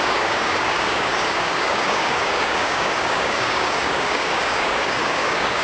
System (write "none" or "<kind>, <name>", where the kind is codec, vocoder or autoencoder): codec, DAC